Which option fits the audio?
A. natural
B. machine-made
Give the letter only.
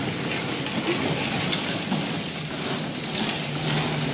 A